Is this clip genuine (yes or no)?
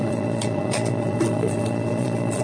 no